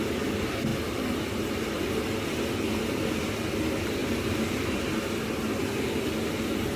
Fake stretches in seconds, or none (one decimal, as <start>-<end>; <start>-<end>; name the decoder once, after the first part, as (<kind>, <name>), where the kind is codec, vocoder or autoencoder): 0.7-1.9 (vocoder, BigVGAN v2); 4.0-4.9